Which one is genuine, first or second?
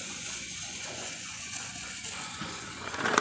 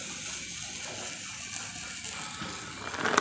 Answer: second